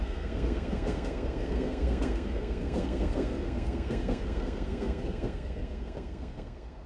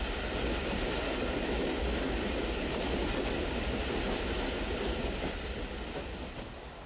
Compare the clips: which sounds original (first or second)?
second